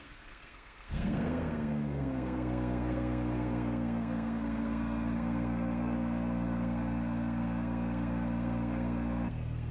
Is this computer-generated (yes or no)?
yes